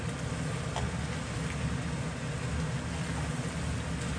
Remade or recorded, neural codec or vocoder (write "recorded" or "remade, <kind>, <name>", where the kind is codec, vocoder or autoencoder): recorded